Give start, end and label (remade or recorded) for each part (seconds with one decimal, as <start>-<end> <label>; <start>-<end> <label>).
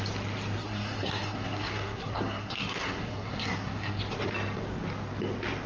0.0-0.6 recorded; 0.6-4.0 remade; 4.0-5.7 recorded